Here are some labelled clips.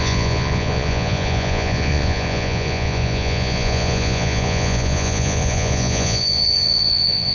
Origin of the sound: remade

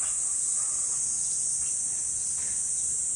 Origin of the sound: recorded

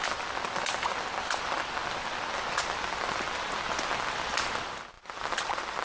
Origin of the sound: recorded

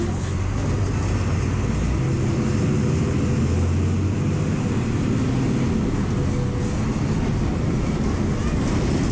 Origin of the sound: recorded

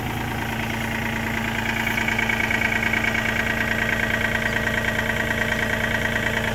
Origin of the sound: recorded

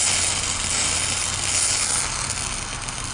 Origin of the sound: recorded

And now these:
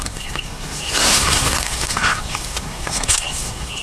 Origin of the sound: remade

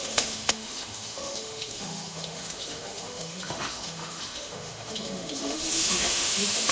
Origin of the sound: remade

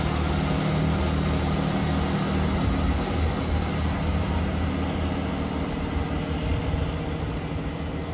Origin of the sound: recorded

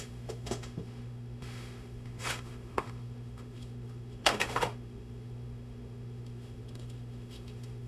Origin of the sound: remade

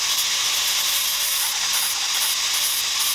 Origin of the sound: recorded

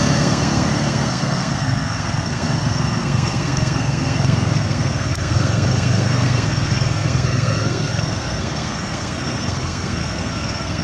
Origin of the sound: remade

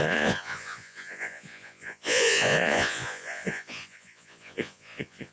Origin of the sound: remade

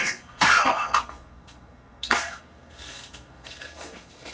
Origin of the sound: remade